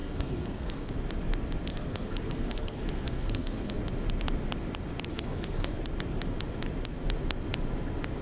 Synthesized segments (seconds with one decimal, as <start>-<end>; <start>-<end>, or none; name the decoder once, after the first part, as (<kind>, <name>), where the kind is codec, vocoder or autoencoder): 0.0-0.9 (codec, SNAC); 1.7-3.8; 5.1-5.8